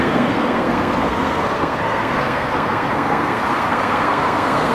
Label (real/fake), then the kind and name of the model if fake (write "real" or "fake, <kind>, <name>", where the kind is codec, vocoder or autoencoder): fake, codec, SNAC